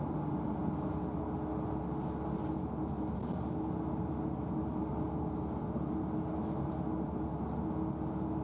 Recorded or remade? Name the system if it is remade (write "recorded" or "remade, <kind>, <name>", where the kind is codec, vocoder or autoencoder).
recorded